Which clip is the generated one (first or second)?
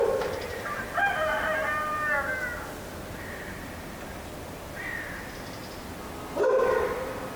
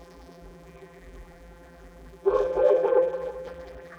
second